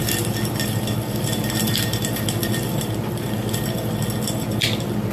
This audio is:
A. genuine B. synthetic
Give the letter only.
B